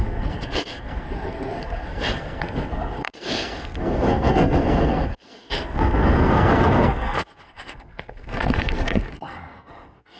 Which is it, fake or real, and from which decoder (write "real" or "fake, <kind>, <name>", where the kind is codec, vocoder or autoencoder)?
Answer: fake, codec, SNAC